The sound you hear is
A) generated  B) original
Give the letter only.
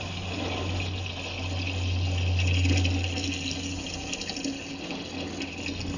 B